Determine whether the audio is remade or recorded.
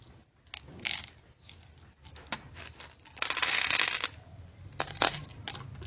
recorded